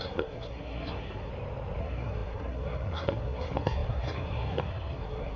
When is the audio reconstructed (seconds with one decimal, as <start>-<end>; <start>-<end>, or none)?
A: 0.0-1.3; 1.8-5.4